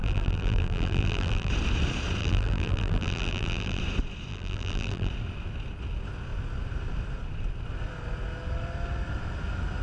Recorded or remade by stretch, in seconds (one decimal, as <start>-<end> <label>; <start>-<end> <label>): 0.0-1.5 remade; 1.5-2.2 recorded; 2.2-3.8 remade; 3.8-4.3 recorded; 4.3-5.1 remade; 5.1-9.8 recorded